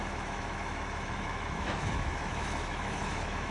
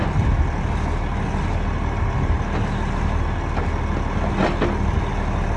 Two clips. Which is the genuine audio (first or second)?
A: second